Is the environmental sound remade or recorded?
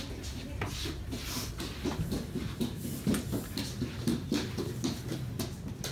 recorded